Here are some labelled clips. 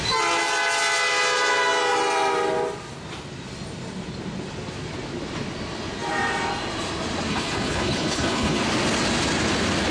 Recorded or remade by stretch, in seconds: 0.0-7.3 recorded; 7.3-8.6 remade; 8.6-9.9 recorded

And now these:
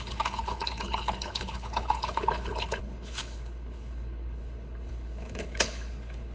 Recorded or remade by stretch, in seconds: 0.0-6.3 remade

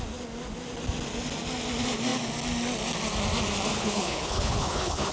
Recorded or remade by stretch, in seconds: 0.0-3.7 recorded; 3.7-5.1 remade

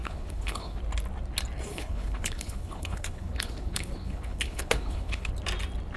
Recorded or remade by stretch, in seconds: 0.0-0.8 remade; 0.8-1.7 recorded; 1.7-5.3 remade; 5.3-6.0 recorded

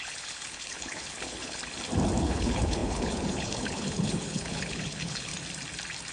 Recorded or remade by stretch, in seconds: 0.0-1.6 remade; 1.6-2.2 recorded; 2.2-5.3 remade; 5.3-6.1 recorded

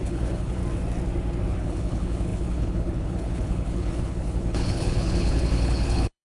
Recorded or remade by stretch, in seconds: 0.0-0.6 remade; 0.6-1.5 recorded; 1.5-6.2 remade